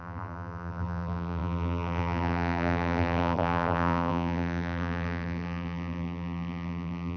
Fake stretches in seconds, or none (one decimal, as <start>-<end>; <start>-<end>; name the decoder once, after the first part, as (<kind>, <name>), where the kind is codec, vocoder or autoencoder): 0.0-7.2 (vocoder, BigVGAN v2)